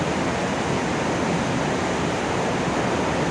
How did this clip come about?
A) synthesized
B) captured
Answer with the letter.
B